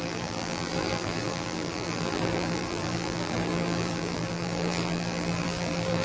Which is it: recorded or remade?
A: remade